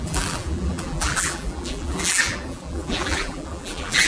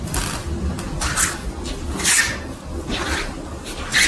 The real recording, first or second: second